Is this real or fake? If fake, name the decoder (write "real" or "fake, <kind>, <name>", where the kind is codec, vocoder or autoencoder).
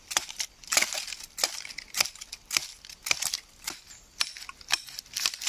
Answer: real